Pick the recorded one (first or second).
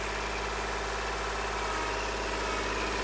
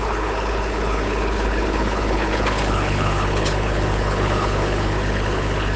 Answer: first